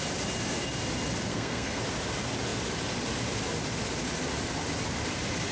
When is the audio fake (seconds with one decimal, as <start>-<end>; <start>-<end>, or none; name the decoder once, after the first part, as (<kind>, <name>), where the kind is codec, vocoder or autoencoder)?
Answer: 1.3-1.8 (codec, SNAC)